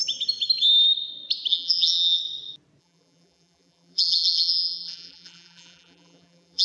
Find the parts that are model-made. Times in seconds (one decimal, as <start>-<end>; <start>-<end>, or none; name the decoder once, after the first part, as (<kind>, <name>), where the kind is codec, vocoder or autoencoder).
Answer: 1.5-2.2 (vocoder, BigVGAN v2); 2.8-6.6